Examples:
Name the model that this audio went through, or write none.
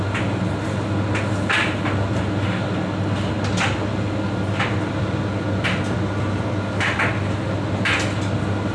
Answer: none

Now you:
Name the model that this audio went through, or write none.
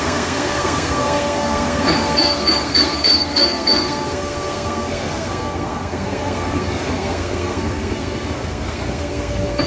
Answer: codec, SNAC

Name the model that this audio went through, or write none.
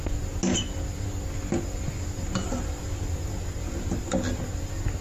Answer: none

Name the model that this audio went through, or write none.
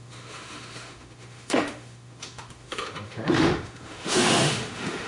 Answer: autoencoder, DAC-VAE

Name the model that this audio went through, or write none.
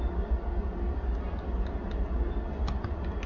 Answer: none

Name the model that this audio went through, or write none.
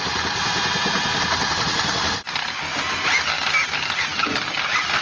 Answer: none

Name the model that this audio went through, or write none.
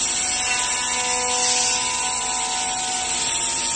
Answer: none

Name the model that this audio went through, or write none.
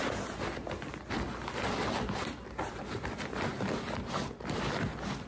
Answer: none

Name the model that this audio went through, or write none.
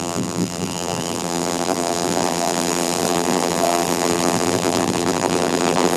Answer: vocoder, BigVGAN v2